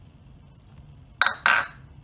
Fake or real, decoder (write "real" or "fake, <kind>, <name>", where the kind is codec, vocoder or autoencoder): real